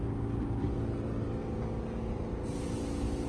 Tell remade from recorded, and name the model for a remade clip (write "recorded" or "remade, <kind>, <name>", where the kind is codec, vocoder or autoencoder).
recorded